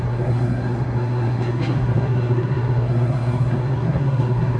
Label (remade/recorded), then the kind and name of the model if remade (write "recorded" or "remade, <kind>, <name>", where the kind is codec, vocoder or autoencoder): remade, codec, SNAC